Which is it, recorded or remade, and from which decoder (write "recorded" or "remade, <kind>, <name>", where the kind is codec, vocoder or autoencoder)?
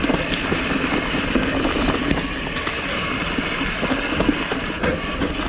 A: recorded